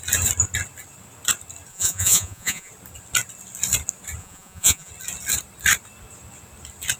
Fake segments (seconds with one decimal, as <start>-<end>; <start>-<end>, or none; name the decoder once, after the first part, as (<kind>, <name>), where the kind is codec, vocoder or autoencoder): 1.7-2.7 (vocoder, Vocos); 4.2-4.9